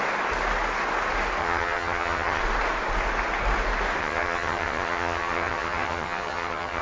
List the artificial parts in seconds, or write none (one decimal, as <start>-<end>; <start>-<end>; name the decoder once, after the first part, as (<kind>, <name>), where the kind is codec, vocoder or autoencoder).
1.4-2.4 (vocoder, HiFi-GAN); 4.0-6.8